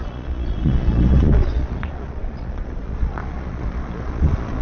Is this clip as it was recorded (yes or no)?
no